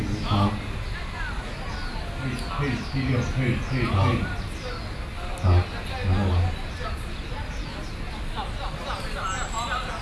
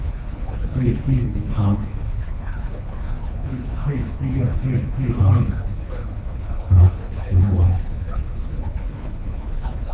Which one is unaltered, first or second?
first